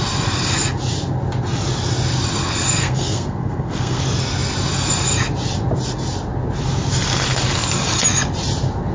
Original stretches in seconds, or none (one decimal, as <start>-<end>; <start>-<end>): 0.0-2.8; 4.0-8.9